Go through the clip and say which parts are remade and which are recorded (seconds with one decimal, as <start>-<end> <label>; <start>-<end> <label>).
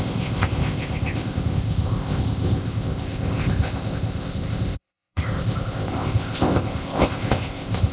0.0-7.9 remade